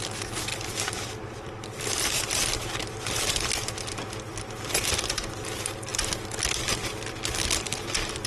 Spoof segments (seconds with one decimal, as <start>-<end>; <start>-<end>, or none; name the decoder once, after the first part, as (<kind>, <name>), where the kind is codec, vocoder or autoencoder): 0.5-2.6 (vocoder, BigVGAN v2)